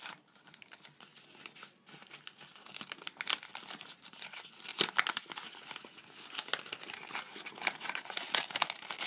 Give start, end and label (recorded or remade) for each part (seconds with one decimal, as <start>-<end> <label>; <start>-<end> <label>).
0.0-9.1 recorded